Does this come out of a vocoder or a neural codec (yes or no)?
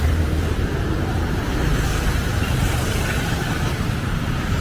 yes